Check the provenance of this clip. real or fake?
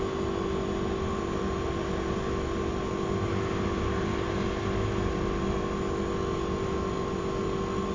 real